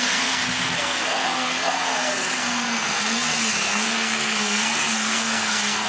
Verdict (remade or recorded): remade